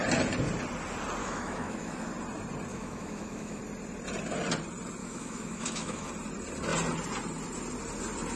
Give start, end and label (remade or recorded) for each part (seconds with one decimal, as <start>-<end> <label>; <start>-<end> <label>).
0.0-1.2 recorded; 1.2-2.1 remade; 2.1-2.7 recorded; 2.7-3.6 remade; 3.6-5.0 recorded; 5.0-6.1 remade; 6.1-8.4 recorded